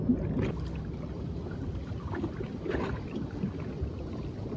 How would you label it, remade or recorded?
recorded